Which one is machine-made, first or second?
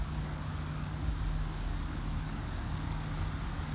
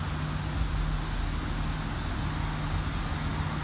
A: first